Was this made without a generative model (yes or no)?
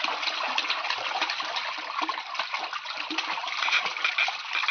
yes